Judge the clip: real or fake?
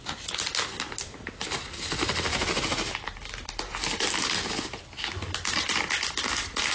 real